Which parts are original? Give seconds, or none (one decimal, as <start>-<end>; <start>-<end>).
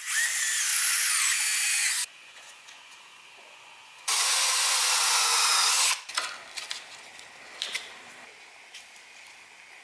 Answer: 0.0-0.7; 5.9-9.8